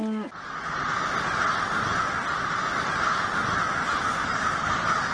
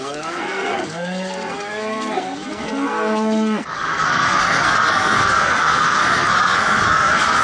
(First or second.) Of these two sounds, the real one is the first